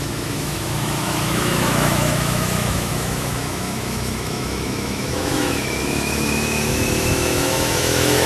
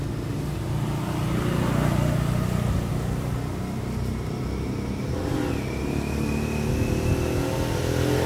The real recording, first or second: second